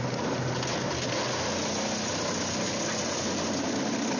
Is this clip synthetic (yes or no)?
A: no